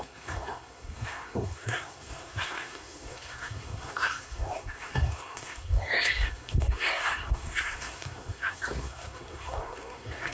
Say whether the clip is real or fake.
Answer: fake